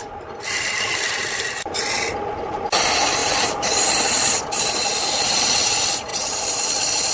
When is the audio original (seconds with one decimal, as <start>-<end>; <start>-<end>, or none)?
0.0-7.1